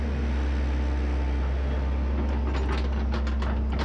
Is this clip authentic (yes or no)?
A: yes